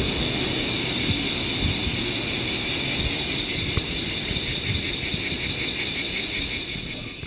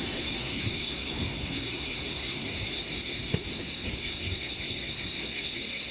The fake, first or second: second